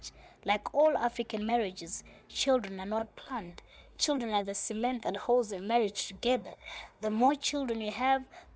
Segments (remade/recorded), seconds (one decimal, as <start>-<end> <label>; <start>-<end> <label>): 0.0-3.0 recorded; 3.0-7.3 remade; 7.3-8.6 recorded